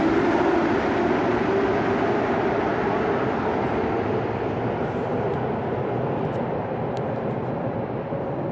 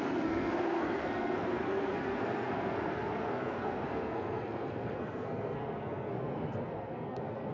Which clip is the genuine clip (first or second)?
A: first